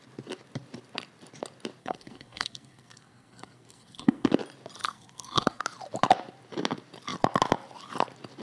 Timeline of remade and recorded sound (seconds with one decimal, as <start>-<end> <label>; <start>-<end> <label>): 0.0-1.8 recorded; 1.8-4.3 remade; 4.3-4.8 recorded; 4.8-5.6 remade; 5.6-8.4 recorded